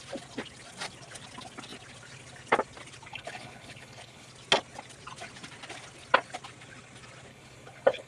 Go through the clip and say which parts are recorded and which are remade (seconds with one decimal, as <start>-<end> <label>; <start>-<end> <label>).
0.0-3.1 recorded; 3.1-4.3 remade; 4.3-7.3 recorded; 7.3-8.1 remade